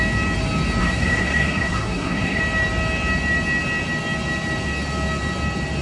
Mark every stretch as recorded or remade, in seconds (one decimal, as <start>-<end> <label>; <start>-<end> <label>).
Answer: 0.0-0.8 recorded; 0.8-2.4 remade; 2.4-5.8 recorded